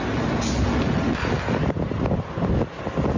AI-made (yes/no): no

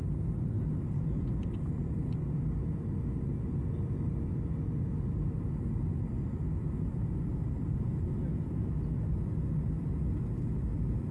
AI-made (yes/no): no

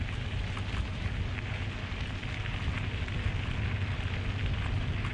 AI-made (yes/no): no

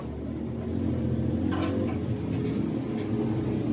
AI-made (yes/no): no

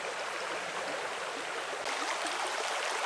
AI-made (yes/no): no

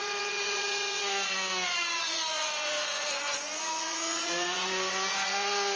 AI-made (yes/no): yes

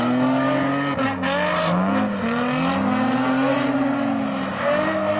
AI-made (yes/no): no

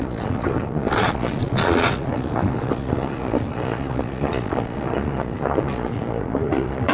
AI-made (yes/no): yes